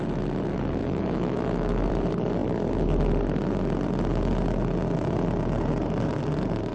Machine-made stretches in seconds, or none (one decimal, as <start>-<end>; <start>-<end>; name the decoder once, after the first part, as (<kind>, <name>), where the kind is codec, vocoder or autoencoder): 0.8-1.9 (autoencoder, DAC-VAE)